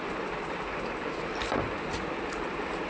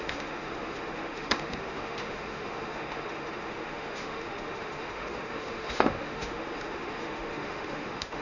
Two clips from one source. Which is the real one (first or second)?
first